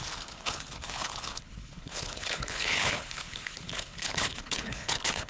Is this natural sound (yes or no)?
no